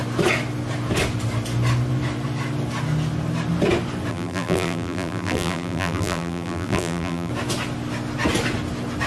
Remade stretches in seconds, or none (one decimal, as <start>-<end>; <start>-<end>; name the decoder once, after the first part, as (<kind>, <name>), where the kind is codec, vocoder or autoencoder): 4.1-7.3 (vocoder, BigVGAN v2)